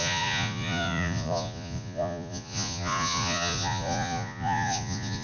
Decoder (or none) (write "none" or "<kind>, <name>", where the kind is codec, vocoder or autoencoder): vocoder, Vocos